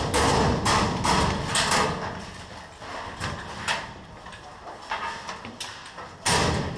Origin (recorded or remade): recorded